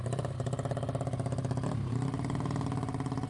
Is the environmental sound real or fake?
real